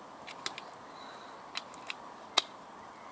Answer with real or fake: real